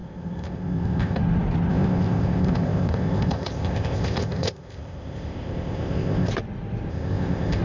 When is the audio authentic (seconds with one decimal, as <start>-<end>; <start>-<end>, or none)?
1.2-1.7; 6.3-6.9